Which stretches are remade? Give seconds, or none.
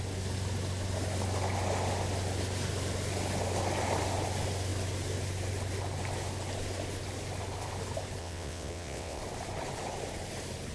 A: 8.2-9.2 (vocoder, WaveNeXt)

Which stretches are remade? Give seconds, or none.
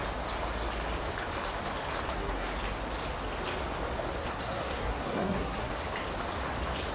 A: 2.1-2.5 (codec, SNAC); 4.3-5.7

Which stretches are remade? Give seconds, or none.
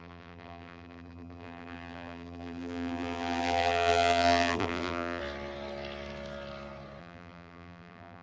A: 0.0-5.2 (vocoder, BigVGAN v2); 7.0-8.2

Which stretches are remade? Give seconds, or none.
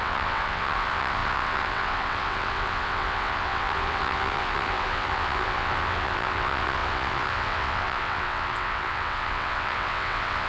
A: 0.0-10.5 (vocoder, WaveNeXt)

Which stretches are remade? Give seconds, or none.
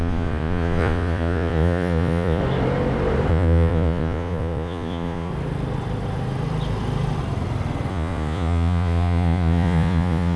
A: 0.0-2.4 (vocoder, Vocos); 3.3-5.3; 7.9-10.4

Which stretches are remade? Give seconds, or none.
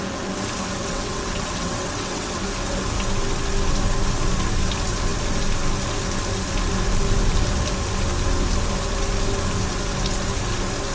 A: 0.8-2.4 (vocoder, WaveNeXt)